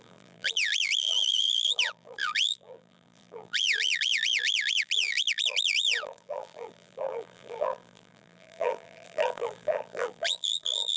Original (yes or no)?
no